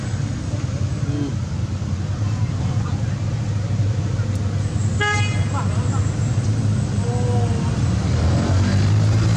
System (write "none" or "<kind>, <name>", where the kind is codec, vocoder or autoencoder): none